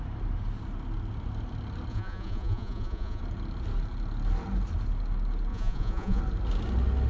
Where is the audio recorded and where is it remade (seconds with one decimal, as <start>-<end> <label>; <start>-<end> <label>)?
0.0-1.9 recorded; 1.9-3.2 remade; 3.2-5.5 recorded; 5.5-6.2 remade; 6.2-7.1 recorded